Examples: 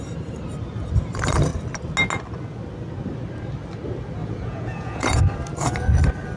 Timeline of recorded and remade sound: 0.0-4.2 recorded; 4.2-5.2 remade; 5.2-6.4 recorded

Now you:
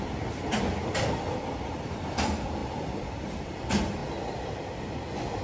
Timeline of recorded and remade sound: 0.0-5.4 recorded

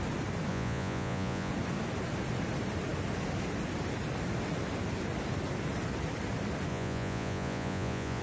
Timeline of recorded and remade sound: 0.0-0.5 recorded; 0.5-1.5 remade; 1.5-6.7 recorded; 6.7-8.2 remade

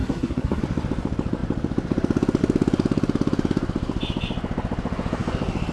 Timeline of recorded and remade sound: 0.0-0.6 remade; 0.6-5.7 recorded

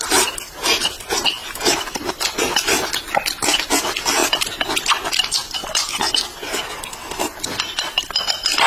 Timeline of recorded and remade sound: 0.0-1.4 recorded; 1.4-2.1 remade; 2.1-8.7 recorded